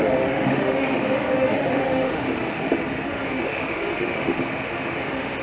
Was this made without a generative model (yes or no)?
no